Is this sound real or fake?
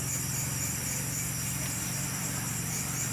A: fake